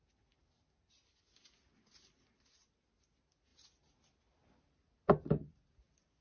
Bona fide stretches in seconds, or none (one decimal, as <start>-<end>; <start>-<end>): 0.0-6.2